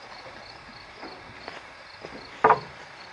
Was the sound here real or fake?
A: real